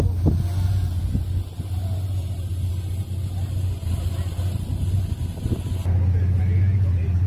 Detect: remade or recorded recorded